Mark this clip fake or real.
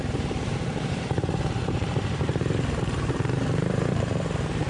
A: fake